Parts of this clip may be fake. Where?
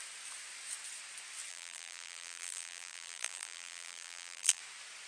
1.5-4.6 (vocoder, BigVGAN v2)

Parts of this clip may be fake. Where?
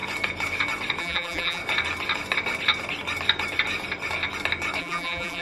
1.0-1.6 (vocoder, BigVGAN v2); 4.8-5.4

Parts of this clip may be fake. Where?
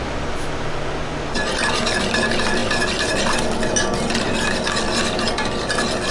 none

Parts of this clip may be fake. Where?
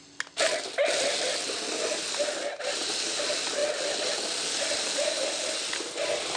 none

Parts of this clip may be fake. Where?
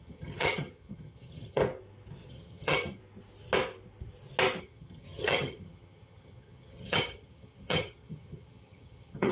0.0-1.6 (vocoder, HiFi-GAN); 2.3-3.0; 4.6-9.3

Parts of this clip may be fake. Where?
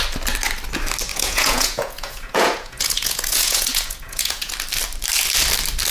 1.1-4.5 (vocoder, Vocos)